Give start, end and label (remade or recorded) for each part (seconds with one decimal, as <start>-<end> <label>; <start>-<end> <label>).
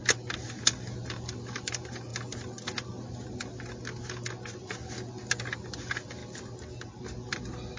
0.0-7.8 recorded